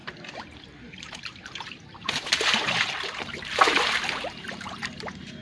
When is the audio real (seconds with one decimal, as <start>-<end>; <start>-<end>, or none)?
none